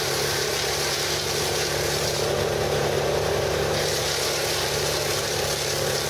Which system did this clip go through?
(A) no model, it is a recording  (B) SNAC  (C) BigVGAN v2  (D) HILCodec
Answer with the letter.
C